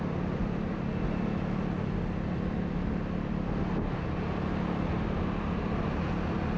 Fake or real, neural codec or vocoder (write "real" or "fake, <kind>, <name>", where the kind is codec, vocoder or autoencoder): real